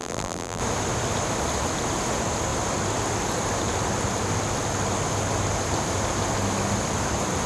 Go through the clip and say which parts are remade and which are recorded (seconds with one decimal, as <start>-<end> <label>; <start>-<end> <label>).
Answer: 0.0-0.6 remade; 0.6-7.5 recorded